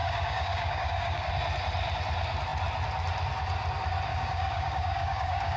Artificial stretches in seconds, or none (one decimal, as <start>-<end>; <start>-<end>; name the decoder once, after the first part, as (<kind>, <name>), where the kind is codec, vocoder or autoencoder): 0.0-1.3 (codec, DAC); 4.1-5.6